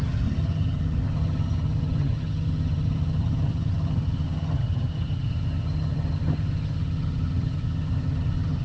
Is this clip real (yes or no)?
no